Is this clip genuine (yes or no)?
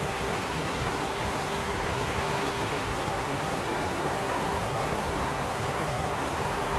no